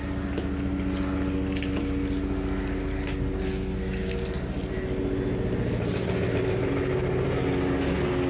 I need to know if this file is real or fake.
real